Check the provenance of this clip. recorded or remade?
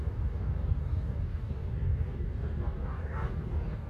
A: remade